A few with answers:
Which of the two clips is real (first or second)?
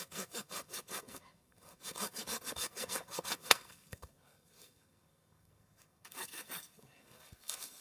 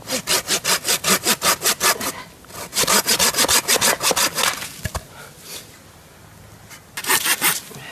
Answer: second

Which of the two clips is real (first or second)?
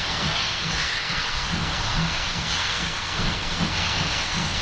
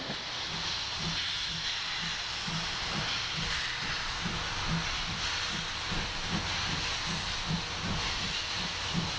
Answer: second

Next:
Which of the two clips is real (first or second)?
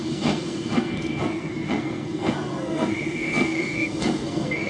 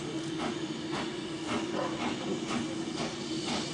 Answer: second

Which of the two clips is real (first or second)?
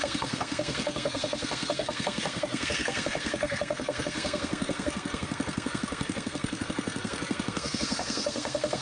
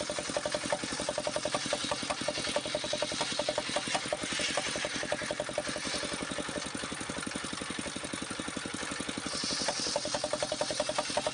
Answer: second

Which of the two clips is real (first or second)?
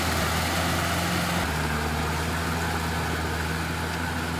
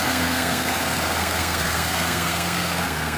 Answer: first